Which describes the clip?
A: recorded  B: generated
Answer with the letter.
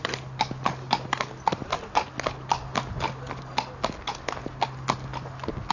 A